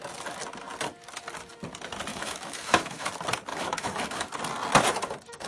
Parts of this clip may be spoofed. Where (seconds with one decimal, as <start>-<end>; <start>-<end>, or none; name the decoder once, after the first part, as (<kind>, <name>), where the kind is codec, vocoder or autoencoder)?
2.1-3.1 (autoencoder, DAC-VAE); 3.5-4.3